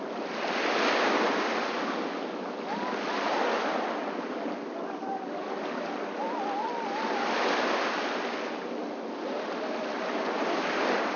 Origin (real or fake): real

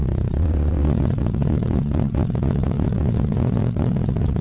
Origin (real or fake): fake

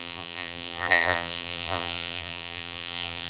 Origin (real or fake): fake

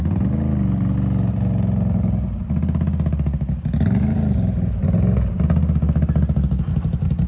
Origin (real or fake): real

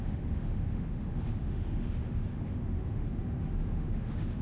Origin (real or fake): fake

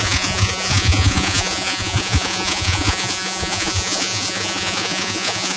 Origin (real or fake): fake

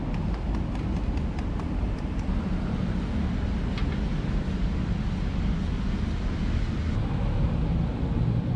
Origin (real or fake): real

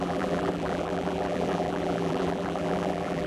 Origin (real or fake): fake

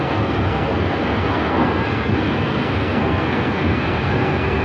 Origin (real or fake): fake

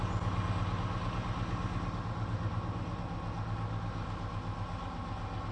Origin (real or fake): real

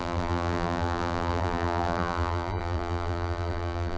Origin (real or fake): fake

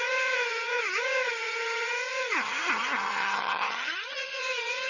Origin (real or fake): fake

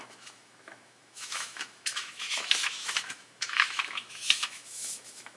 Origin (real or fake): fake